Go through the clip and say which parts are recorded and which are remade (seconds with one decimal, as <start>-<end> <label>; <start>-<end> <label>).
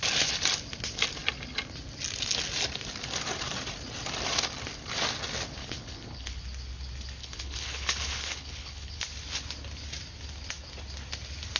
0.0-5.6 recorded; 5.6-6.4 remade; 6.4-7.2 recorded; 7.2-9.0 remade; 9.0-11.6 recorded